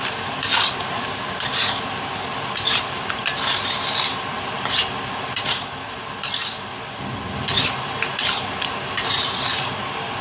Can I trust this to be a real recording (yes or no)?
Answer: no